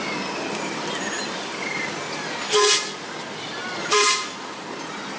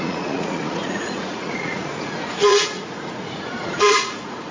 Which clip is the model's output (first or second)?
second